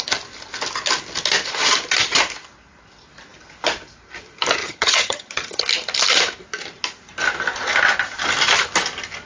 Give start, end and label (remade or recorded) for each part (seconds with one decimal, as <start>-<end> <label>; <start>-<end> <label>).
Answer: 0.0-4.6 recorded; 4.6-5.6 remade; 5.6-9.3 recorded